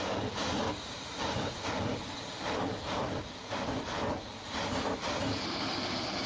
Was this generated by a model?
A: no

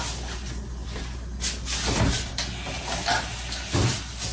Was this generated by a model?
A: no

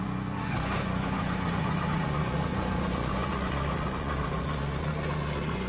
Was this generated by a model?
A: yes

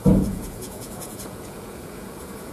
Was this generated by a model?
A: yes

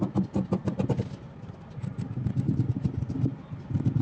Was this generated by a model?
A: no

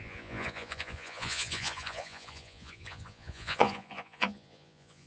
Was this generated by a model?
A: yes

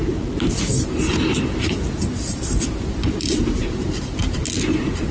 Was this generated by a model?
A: no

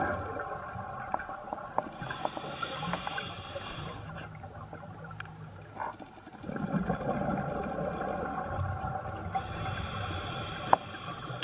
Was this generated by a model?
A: no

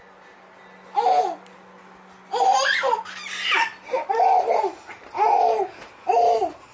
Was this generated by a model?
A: no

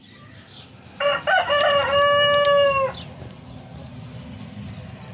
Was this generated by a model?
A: no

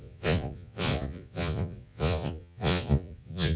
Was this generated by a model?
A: yes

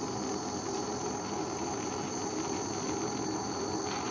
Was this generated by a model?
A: no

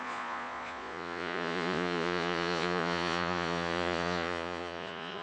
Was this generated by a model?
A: yes